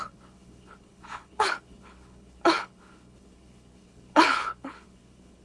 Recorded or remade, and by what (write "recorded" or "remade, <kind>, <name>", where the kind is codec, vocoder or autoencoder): remade, codec, HILCodec